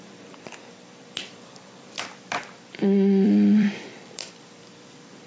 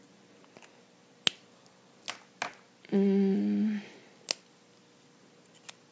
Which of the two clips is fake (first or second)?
first